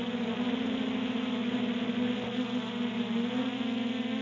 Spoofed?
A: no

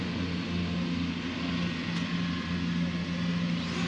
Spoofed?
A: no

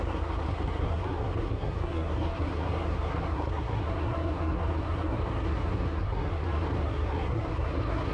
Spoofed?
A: yes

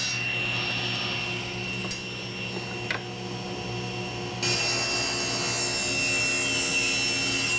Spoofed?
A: no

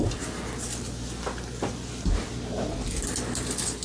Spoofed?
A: no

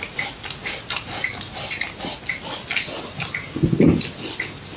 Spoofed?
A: no